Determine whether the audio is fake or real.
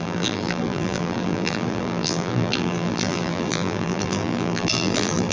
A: fake